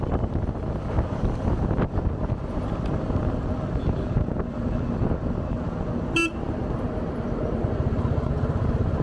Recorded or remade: recorded